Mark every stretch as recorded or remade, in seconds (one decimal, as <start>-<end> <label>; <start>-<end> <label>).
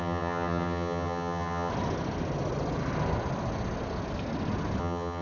0.0-1.7 remade; 1.7-4.8 recorded; 4.8-5.2 remade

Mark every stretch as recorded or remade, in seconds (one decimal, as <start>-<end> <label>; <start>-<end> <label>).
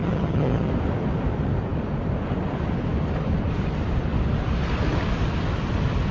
0.0-0.7 remade; 0.7-6.1 recorded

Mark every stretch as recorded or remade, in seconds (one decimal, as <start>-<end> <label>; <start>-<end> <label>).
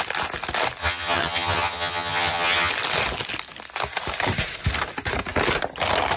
0.0-0.8 recorded; 0.8-2.7 remade; 2.7-6.2 recorded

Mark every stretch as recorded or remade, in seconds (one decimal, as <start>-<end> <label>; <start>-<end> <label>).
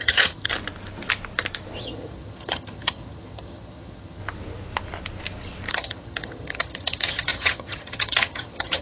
0.0-0.5 remade; 0.5-1.8 recorded; 1.8-4.2 remade; 4.2-5.7 recorded; 5.7-8.8 remade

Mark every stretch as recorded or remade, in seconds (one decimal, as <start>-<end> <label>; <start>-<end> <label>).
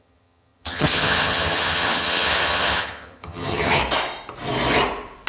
0.0-3.8 remade; 3.8-5.3 recorded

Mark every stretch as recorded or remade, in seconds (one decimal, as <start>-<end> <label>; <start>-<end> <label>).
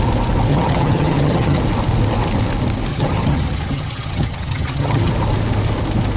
0.0-0.5 recorded; 0.5-1.6 remade; 1.6-2.9 recorded; 2.9-5.1 remade; 5.1-6.2 recorded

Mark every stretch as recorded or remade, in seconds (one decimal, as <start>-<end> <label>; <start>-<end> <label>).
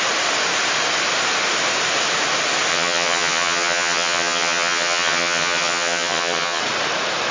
0.0-2.7 recorded; 2.7-6.6 remade; 6.6-7.3 recorded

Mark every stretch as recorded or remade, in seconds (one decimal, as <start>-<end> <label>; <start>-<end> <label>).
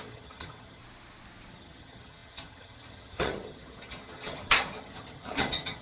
0.0-0.8 remade; 0.8-1.5 recorded; 1.5-5.8 remade